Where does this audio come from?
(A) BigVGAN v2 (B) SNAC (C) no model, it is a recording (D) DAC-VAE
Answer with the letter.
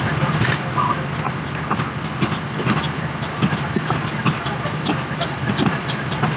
C